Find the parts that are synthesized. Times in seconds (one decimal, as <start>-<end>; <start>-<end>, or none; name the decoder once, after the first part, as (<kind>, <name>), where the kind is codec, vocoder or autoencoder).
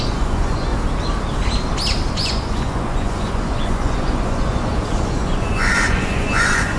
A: 0.0-0.7 (vocoder, Vocos); 2.1-6.8